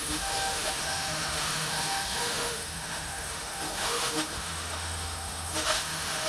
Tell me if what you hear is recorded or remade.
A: remade